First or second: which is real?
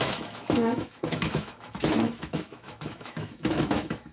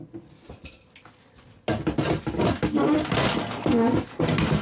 second